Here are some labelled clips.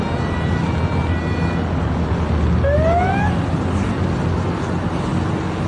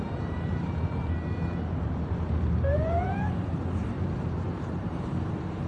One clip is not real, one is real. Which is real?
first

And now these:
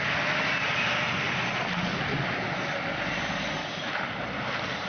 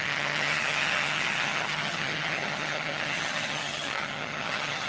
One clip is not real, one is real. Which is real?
first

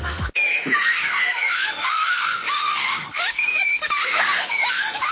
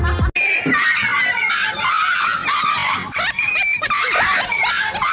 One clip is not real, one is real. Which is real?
second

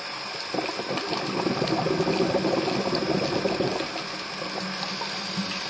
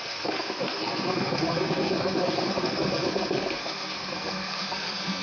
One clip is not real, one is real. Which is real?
first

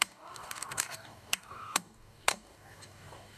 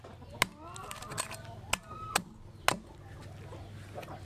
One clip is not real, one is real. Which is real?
second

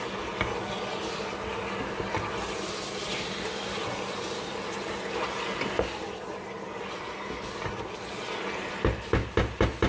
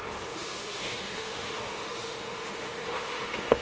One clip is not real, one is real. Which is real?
first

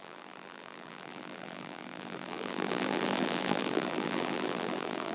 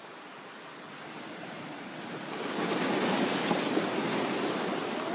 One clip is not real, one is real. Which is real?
second